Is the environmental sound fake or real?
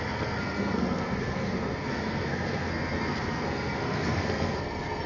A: fake